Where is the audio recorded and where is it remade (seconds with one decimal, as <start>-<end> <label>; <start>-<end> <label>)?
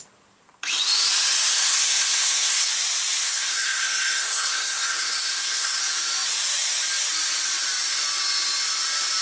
0.0-1.5 recorded; 1.5-2.7 remade; 2.7-3.2 recorded; 3.2-5.8 remade; 5.8-9.2 recorded